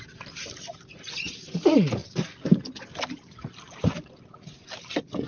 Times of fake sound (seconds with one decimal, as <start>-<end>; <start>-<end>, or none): none